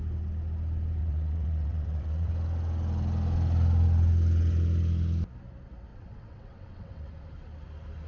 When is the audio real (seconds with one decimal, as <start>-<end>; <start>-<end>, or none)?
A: 0.0-1.0; 2.3-5.9; 7.1-8.1